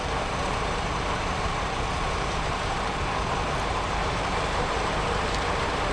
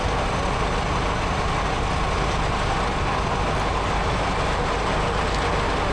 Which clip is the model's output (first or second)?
first